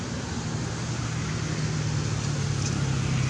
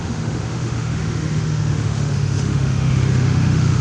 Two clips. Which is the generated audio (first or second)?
second